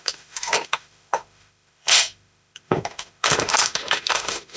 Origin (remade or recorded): remade